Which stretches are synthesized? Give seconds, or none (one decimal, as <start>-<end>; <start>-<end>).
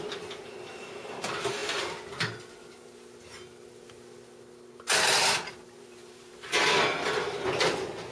none